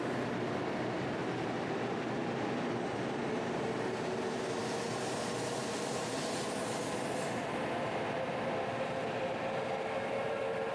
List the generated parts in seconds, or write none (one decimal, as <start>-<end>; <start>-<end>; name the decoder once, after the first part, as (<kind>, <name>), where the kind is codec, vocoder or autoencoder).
none

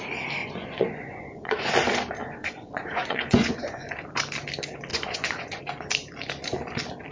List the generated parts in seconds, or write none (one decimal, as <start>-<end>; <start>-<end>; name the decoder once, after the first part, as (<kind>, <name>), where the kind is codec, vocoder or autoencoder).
0.4-1.7 (vocoder, Vocos); 2.2-3.9; 4.9-5.6

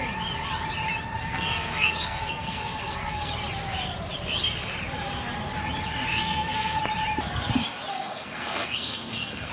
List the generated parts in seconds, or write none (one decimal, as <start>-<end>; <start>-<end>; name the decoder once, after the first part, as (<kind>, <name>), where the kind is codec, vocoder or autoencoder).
1.2-3.3 (codec, SNAC); 6.1-6.8; 7.9-9.5

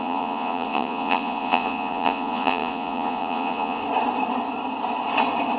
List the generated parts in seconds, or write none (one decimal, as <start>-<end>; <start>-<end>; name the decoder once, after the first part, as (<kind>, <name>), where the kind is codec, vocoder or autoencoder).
0.0-3.8 (vocoder, Vocos)

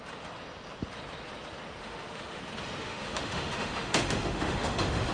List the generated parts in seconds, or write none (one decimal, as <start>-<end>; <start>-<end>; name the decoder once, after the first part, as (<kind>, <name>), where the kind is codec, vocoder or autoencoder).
1.8-2.4 (autoencoder, DAC-VAE); 2.8-5.1

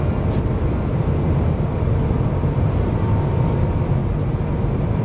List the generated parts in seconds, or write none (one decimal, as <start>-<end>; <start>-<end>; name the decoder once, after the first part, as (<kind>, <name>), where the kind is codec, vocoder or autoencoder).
2.4-3.1 (vocoder, BigVGAN v2); 4.0-5.0